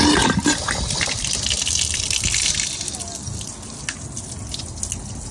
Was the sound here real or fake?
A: real